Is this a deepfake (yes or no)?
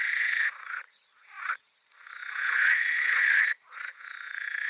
yes